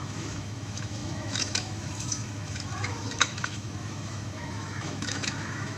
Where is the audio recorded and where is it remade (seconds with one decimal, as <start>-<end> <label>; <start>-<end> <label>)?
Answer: 0.0-5.8 remade